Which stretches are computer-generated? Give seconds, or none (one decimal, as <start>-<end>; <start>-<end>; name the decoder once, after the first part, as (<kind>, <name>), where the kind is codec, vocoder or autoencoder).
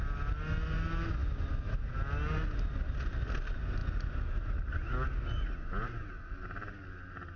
none